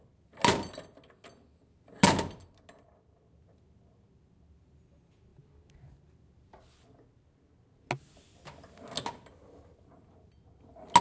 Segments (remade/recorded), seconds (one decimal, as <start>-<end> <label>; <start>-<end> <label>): 0.0-11.0 recorded